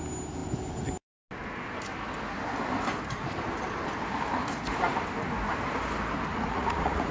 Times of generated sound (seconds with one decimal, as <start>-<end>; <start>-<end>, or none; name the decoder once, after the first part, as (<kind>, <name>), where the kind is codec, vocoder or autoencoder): 6.3-7.1 (vocoder, Vocos)